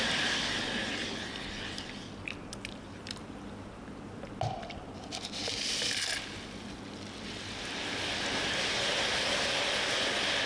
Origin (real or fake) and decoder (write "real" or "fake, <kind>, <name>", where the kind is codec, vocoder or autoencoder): real